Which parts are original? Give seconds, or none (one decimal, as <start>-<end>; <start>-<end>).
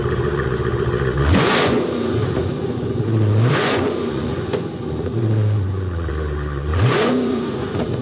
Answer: none